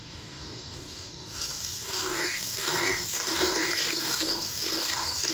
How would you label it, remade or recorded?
remade